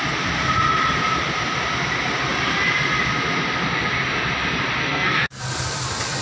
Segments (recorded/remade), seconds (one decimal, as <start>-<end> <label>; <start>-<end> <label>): 0.0-4.8 recorded; 4.8-5.4 remade; 5.4-6.2 recorded